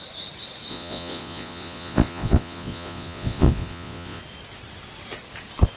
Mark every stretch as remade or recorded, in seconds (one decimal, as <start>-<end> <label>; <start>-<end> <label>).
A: 0.0-0.7 recorded; 0.7-4.2 remade; 4.2-5.8 recorded